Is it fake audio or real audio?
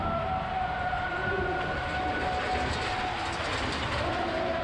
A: real